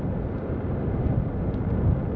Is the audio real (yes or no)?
yes